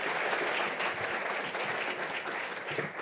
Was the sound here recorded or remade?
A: recorded